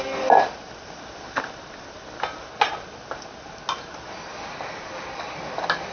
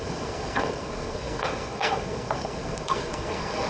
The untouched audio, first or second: first